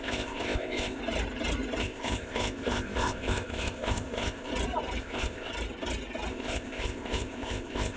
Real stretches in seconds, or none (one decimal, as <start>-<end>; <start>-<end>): 1.0-1.8; 4.5-5.0; 5.5-6.3